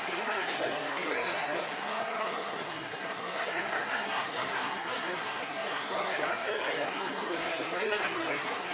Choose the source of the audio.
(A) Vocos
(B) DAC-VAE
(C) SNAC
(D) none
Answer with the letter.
C